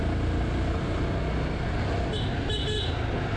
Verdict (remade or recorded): recorded